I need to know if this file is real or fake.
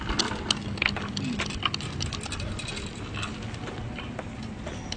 real